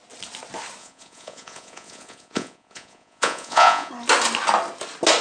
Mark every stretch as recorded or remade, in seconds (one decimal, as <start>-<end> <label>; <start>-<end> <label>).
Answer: 0.0-0.8 recorded; 0.8-3.9 remade; 3.9-5.2 recorded